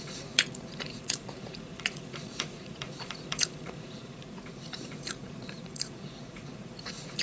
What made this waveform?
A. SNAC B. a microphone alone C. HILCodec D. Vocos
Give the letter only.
D